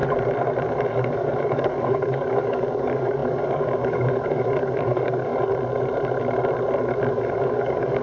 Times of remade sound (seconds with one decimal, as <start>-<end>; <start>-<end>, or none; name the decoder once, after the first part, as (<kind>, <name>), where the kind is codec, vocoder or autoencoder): 0.9-5.3 (codec, DAC); 7.1-8.0